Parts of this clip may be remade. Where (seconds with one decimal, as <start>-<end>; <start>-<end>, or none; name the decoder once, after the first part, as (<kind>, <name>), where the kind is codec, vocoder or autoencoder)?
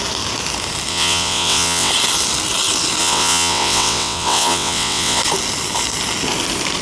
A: 0.9-1.9 (vocoder, WaveNeXt); 3.0-5.2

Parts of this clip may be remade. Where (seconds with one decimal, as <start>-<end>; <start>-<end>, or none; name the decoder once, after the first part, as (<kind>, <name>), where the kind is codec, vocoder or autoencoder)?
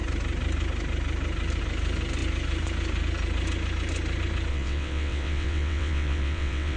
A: 4.5-6.8 (vocoder, WaveNeXt)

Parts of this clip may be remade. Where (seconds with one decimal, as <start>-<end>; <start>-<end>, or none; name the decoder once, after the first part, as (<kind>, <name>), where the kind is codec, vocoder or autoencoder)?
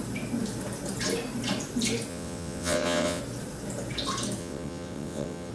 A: 2.1-3.2 (vocoder, WaveNeXt); 4.4-5.5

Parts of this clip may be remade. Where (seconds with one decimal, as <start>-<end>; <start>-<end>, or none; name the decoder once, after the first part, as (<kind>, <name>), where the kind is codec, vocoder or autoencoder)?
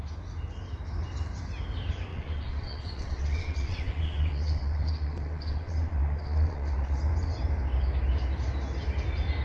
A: 2.1-7.0 (vocoder, WaveNeXt)